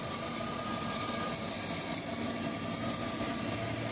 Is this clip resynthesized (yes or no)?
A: no